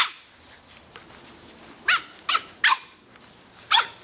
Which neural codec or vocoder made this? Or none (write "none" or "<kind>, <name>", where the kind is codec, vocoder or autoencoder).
none